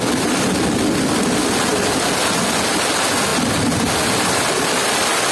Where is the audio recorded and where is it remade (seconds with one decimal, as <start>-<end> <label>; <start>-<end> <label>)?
0.0-5.3 recorded